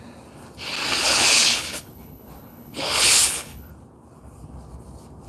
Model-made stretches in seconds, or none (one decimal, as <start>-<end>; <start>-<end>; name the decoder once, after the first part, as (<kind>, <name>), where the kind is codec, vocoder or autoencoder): 1.0-3.7 (codec, HILCodec)